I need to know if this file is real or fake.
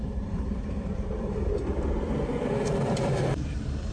fake